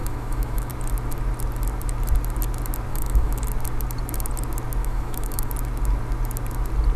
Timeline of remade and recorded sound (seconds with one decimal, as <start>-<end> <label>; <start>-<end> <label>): 0.0-0.7 remade; 0.7-2.9 recorded; 2.9-3.4 remade; 3.4-4.8 recorded; 4.8-5.5 remade; 5.5-7.0 recorded

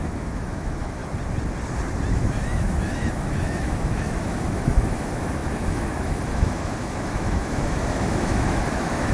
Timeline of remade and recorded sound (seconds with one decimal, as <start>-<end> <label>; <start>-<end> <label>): 0.0-1.0 remade; 1.0-2.1 recorded; 2.1-9.1 remade

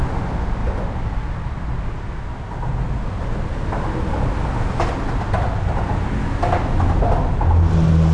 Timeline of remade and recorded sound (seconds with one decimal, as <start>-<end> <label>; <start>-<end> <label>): 0.0-8.1 recorded

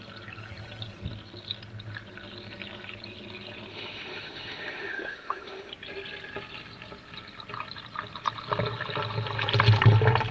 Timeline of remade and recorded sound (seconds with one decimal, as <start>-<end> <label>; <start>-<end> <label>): 0.0-3.7 recorded; 3.7-5.7 remade; 5.7-10.3 recorded